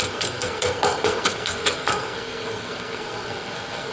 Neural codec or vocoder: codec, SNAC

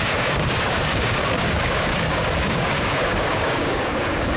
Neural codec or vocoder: codec, DAC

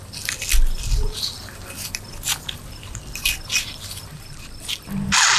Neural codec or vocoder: none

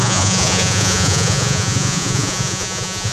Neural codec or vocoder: vocoder, Vocos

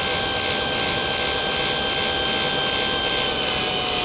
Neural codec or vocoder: none